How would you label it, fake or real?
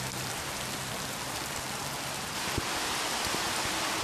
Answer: fake